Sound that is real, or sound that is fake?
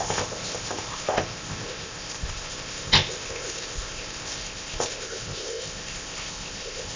fake